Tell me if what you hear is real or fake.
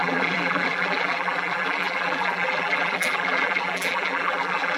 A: fake